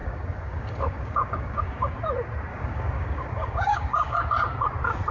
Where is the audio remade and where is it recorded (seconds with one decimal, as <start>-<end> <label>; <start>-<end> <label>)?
0.0-1.9 remade; 1.9-2.5 recorded; 2.5-4.2 remade; 4.2-5.1 recorded